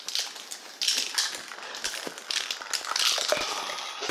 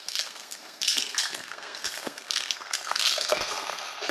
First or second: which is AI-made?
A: second